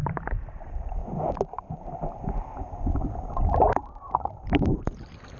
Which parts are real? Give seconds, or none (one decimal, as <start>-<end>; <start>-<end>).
1.0-3.7

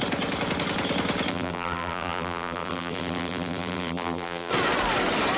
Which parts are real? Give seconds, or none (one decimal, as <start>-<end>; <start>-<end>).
0.0-1.3; 4.5-5.4

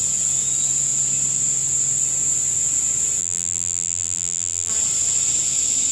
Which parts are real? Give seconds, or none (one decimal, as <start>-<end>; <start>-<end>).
0.0-3.2; 4.7-5.9

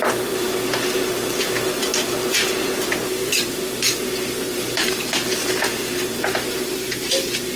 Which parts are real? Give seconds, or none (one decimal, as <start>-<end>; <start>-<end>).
0.0-7.6

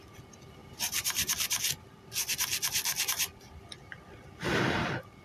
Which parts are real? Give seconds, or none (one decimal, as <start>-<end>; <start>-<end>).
0.0-0.6; 1.3-5.2